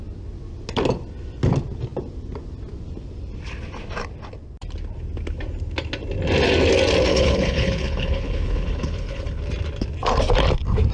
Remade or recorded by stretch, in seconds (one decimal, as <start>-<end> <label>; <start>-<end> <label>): 0.0-7.1 recorded; 7.1-9.4 remade; 9.4-10.9 recorded